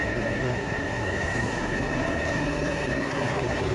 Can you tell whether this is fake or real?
fake